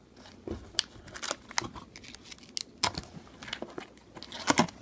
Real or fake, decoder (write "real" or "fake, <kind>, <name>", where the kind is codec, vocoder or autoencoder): real